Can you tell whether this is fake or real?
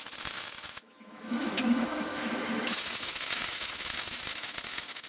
fake